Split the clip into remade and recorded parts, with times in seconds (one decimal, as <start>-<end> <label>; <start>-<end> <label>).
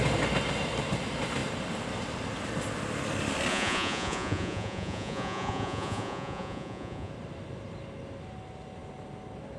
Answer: 0.0-3.5 recorded; 3.5-7.1 remade; 7.1-9.6 recorded